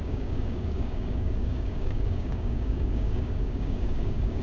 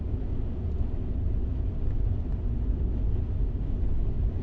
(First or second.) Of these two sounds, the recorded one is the second